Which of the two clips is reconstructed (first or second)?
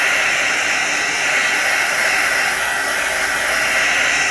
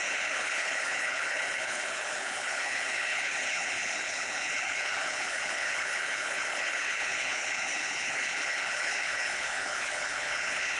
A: second